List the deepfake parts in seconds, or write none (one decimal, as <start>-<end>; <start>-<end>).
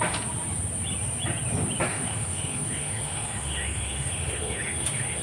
1.9-5.2